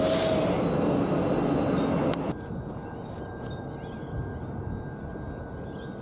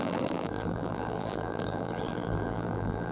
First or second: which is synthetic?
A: second